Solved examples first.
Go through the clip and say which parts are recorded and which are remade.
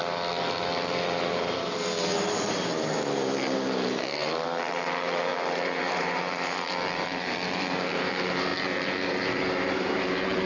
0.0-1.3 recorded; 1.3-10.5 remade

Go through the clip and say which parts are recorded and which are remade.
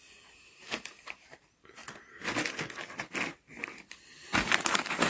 0.0-1.8 remade; 1.8-3.5 recorded; 3.5-5.1 remade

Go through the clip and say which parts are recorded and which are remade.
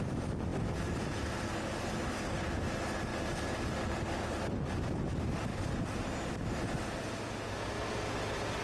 0.0-8.6 recorded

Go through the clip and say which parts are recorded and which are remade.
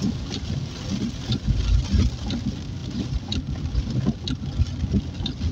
0.0-5.5 recorded